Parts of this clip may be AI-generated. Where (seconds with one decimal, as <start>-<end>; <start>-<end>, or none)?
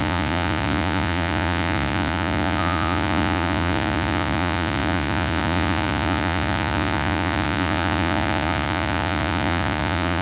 0.0-10.2